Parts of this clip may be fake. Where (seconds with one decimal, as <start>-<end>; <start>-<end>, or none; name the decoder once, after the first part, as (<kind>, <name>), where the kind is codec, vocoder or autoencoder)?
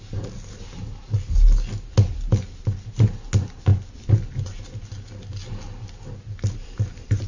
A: none